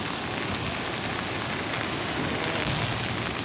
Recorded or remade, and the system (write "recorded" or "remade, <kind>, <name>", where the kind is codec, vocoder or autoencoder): recorded